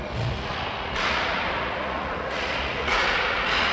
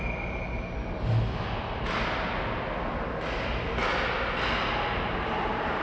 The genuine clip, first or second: second